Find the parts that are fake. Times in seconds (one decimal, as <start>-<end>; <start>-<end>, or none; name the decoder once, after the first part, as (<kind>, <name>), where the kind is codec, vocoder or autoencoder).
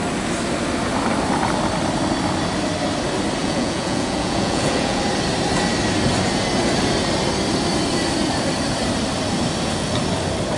3.4-5.0 (vocoder, Vocos)